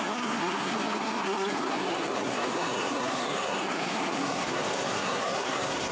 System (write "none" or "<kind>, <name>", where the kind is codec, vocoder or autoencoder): codec, SNAC